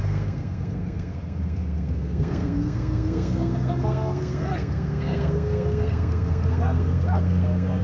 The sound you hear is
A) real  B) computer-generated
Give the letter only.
B